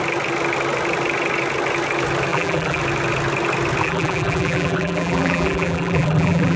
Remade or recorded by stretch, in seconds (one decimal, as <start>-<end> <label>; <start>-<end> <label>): 0.0-2.3 recorded; 2.3-2.8 remade; 2.8-3.8 recorded; 3.8-6.6 remade